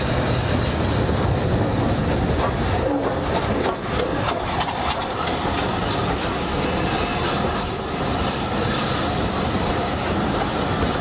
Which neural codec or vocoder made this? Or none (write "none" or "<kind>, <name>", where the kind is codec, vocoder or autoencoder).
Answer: none